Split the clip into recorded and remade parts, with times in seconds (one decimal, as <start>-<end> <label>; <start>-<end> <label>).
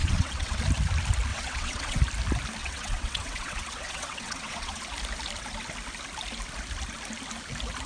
0.0-0.6 remade; 0.6-1.3 recorded; 1.3-2.0 remade; 2.0-2.6 recorded; 2.6-4.8 remade; 4.8-7.9 recorded